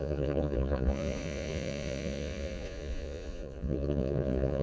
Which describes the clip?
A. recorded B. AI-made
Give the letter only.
B